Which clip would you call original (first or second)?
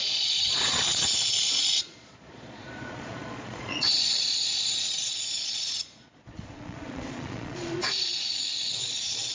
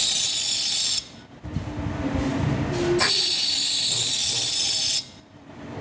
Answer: second